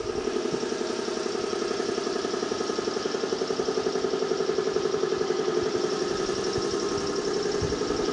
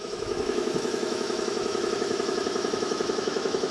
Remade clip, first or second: second